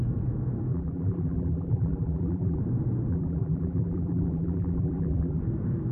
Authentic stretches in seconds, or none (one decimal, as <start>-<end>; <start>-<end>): 0.0-0.7; 2.6-3.1; 5.4-5.9